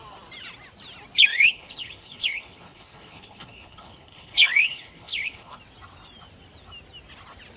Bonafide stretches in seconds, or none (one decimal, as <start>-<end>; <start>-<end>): 0.0-1.3; 5.6-7.6